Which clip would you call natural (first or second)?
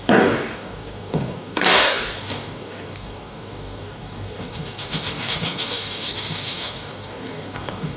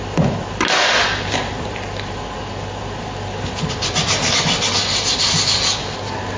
second